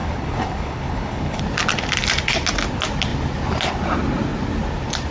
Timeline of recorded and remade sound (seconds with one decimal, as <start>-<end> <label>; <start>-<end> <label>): 0.0-1.4 remade; 1.4-5.1 recorded